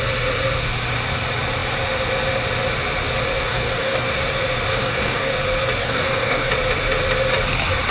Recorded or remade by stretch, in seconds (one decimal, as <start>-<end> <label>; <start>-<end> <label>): 0.0-3.5 recorded; 3.5-4.1 remade; 4.1-4.7 recorded; 4.7-5.3 remade; 5.3-5.8 recorded; 5.8-6.5 remade; 6.5-7.9 recorded